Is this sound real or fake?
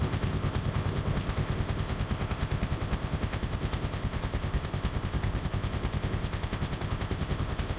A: fake